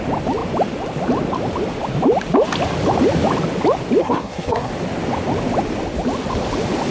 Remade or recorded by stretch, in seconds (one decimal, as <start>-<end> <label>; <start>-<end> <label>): 0.0-4.0 recorded; 4.0-4.7 remade; 4.7-6.9 recorded